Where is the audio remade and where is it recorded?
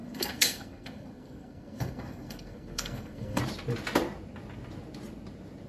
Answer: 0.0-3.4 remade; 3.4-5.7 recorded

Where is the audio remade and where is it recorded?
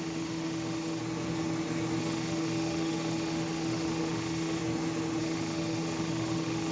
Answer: 0.0-1.0 remade; 1.0-2.0 recorded; 2.0-4.6 remade; 4.6-5.2 recorded; 5.2-6.7 remade